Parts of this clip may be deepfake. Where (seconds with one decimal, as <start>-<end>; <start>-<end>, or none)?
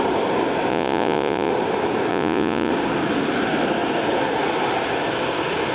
0.7-1.5; 2.1-2.7